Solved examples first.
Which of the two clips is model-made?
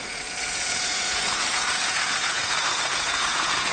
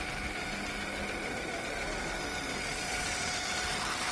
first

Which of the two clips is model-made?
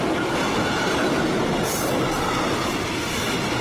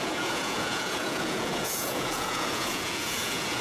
second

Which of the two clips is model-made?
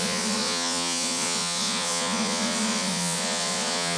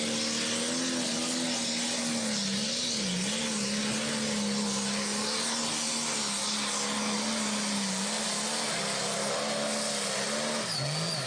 first